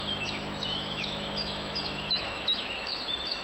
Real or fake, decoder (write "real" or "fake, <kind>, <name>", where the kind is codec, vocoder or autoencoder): fake, autoencoder, DAC-VAE